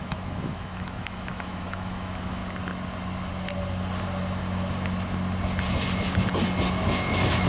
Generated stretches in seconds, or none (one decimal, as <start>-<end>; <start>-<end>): 0.0-2.4; 6.7-7.5